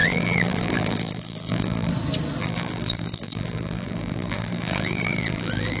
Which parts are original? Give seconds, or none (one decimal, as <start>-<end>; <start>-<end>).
1.9-2.4